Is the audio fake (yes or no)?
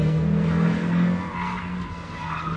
yes